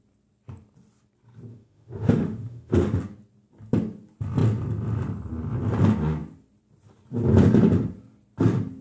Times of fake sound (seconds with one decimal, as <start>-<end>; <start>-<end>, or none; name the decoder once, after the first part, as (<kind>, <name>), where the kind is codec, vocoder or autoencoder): 1.5-3.0 (autoencoder, DAC-VAE)